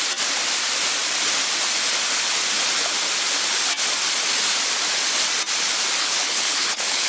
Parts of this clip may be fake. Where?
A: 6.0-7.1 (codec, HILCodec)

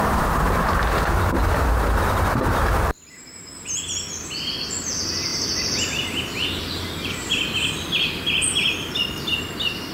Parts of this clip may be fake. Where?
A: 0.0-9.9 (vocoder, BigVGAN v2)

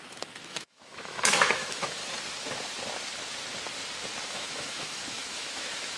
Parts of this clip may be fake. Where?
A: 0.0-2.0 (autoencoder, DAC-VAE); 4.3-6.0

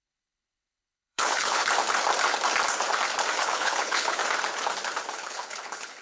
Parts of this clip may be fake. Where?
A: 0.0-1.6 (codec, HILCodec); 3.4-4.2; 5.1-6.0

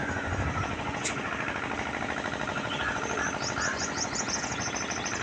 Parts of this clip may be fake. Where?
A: 0.0-1.3 (vocoder, Vocos); 2.5-3.0; 3.7-4.7

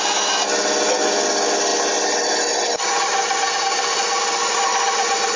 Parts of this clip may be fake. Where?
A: none